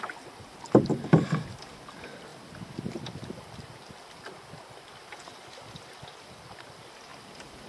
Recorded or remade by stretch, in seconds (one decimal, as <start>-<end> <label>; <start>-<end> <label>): 0.0-7.7 recorded

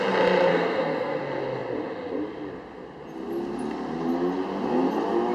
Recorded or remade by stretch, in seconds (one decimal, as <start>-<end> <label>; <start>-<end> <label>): 0.0-0.5 recorded; 0.5-1.2 remade; 1.2-5.3 recorded

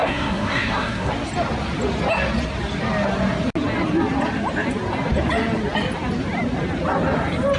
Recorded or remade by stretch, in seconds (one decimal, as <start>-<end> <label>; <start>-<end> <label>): 0.0-1.1 remade; 1.1-7.6 recorded

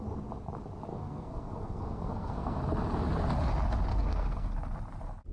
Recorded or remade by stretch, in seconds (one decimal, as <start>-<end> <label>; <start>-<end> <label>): 0.0-0.9 recorded; 0.9-2.6 remade; 2.6-3.9 recorded; 3.9-4.5 remade; 4.5-5.3 recorded

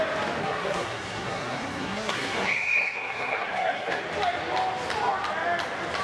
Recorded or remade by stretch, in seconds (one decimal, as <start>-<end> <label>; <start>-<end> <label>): 0.0-0.4 recorded; 0.4-4.0 remade; 4.0-6.0 recorded

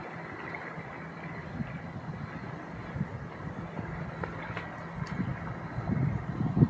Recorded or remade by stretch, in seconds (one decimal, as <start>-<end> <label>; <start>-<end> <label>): 0.0-6.7 recorded

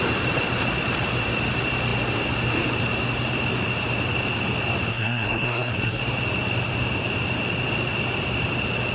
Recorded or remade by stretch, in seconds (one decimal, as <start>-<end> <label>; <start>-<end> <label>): 0.0-4.9 recorded; 4.9-6.0 remade; 6.0-8.9 recorded

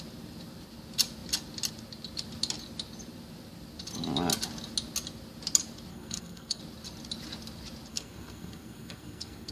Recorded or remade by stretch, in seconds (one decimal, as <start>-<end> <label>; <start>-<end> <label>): 0.0-5.9 recorded; 5.9-6.6 remade; 6.6-7.9 recorded; 7.9-9.5 remade